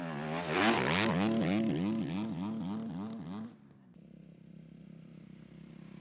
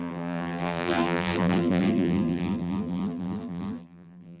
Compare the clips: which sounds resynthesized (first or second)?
second